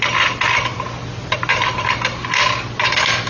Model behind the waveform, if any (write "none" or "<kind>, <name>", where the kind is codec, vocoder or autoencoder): none